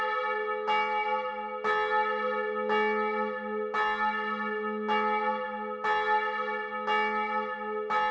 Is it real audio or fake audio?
real